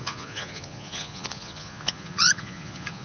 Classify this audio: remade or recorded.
remade